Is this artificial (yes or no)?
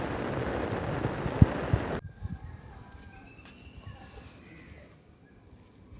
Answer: no